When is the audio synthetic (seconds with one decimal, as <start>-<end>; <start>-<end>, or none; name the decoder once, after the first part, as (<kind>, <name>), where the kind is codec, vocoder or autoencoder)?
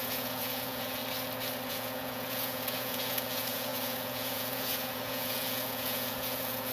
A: 0.0-1.0 (vocoder, Vocos); 1.7-6.7